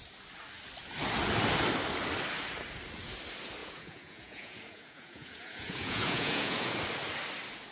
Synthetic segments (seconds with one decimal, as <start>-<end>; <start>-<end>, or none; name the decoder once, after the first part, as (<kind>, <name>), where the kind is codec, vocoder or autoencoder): 3.6-6.7 (vocoder, Vocos)